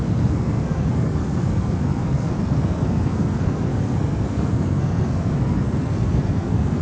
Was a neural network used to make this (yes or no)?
yes